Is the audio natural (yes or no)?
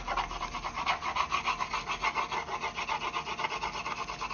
yes